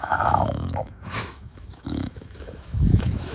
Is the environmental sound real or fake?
fake